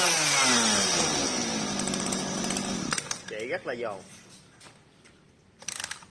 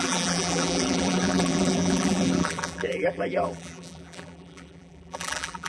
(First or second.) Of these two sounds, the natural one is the first